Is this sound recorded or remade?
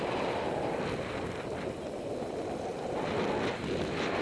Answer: recorded